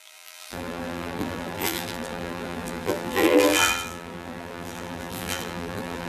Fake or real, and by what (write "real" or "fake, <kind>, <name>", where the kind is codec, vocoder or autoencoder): fake, vocoder, BigVGAN v2